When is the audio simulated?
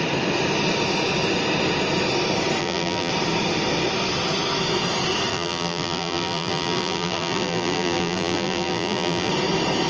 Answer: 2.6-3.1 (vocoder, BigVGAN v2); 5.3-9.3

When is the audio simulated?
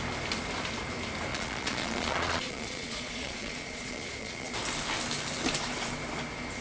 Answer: 1.3-4.5 (vocoder, Vocos)